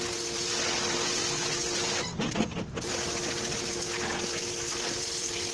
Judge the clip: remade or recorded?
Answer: recorded